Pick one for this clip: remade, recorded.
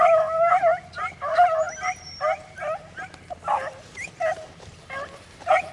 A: recorded